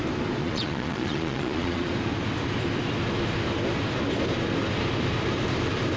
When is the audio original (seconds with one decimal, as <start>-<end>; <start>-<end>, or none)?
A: 0.0-0.4; 1.9-6.0